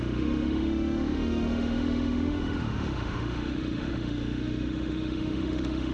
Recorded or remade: remade